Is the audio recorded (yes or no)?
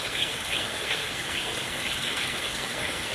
no